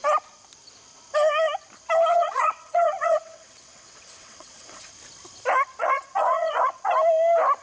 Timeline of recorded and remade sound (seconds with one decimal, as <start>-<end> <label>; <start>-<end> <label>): 0.0-2.1 recorded; 2.1-4.9 remade; 4.9-5.8 recorded; 5.8-6.9 remade; 6.9-7.6 recorded